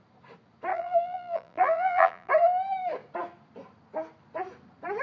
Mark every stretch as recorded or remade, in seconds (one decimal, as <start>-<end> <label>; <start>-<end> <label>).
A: 0.0-0.7 recorded; 0.7-2.3 remade; 2.3-5.0 recorded